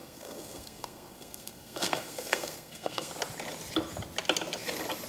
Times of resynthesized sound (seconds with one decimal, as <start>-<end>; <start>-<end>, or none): 0.0-3.1